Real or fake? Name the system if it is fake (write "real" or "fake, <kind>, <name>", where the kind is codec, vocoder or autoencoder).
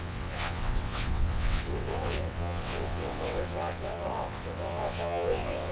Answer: fake, vocoder, WaveNeXt